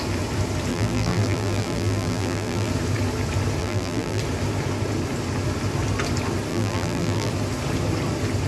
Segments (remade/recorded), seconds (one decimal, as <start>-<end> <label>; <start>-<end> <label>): 0.0-0.7 recorded; 0.7-2.7 remade; 2.7-3.6 recorded; 3.6-4.2 remade; 4.2-6.5 recorded; 6.5-7.3 remade; 7.3-8.5 recorded